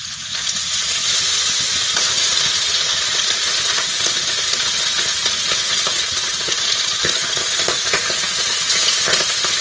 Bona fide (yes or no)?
no